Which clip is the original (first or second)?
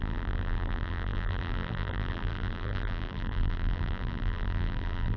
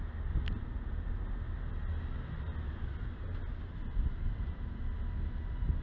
second